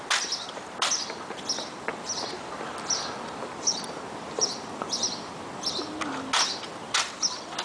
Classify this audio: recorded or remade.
recorded